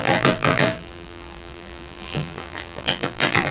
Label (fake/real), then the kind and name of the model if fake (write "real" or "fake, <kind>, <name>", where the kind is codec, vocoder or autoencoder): fake, vocoder, BigVGAN v2